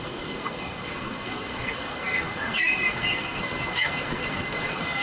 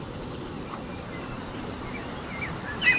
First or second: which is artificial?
first